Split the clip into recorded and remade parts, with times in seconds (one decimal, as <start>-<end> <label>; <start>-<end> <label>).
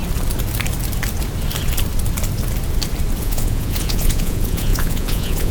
0.0-3.2 recorded; 3.2-5.5 remade